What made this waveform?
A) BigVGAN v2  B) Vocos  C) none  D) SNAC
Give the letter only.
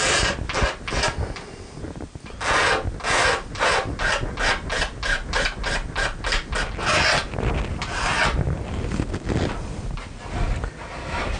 C